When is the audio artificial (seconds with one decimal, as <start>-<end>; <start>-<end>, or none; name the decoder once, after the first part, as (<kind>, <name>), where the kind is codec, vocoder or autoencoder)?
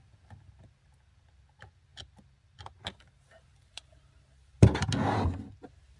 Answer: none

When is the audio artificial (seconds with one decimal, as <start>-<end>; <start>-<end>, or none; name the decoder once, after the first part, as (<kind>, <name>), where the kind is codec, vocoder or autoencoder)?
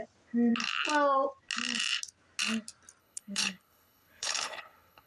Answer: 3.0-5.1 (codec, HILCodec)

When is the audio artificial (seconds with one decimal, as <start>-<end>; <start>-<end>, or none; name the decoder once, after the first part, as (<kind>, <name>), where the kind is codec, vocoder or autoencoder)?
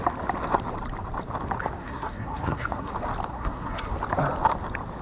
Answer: 1.8-2.9 (codec, SNAC); 3.3-3.9